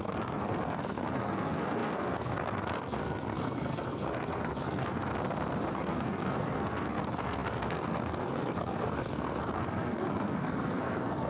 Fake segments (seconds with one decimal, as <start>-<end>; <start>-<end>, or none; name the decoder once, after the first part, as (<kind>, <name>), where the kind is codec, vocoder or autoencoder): 0.0-5.1 (codec, SNAC); 5.7-11.3